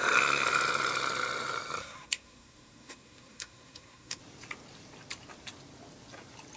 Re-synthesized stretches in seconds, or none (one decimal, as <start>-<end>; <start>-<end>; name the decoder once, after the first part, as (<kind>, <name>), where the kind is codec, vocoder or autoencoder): 1.8-4.2 (codec, SNAC)